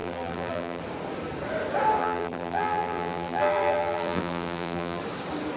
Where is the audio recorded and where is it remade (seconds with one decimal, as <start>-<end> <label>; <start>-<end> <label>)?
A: 0.0-0.8 remade; 0.8-2.0 recorded; 2.0-5.0 remade; 5.0-5.6 recorded